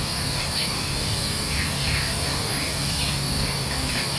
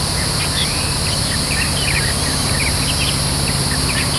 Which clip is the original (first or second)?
second